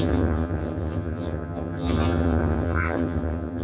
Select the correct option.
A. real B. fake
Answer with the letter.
B